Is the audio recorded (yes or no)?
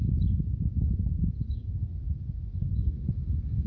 yes